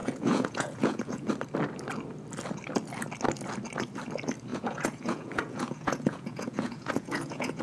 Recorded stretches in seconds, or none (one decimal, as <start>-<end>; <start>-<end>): 1.3-4.5